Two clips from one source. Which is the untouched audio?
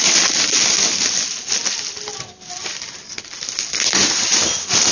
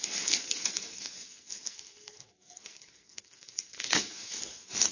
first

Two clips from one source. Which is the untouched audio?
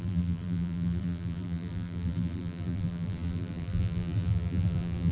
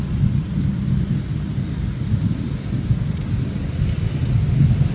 second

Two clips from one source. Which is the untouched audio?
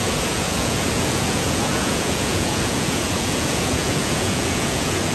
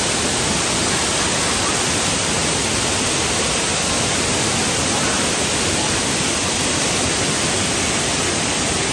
second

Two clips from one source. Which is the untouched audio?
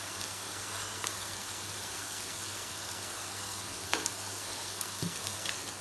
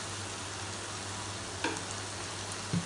second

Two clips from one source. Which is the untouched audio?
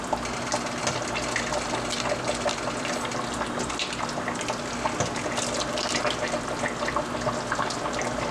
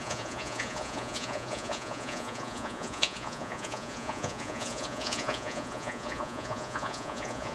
first